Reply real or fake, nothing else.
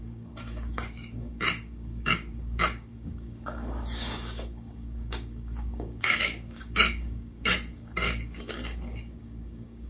fake